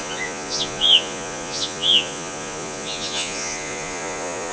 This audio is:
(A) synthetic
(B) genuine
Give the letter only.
A